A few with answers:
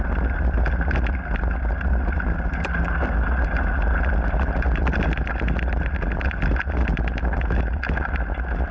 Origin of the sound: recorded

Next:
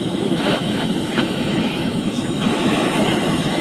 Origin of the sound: remade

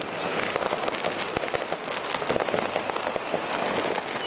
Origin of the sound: recorded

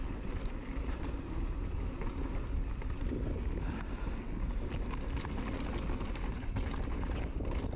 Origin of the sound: recorded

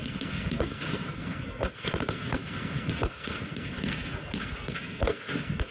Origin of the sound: remade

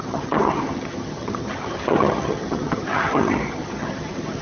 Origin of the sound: remade